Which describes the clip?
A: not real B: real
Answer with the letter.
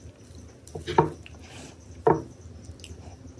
B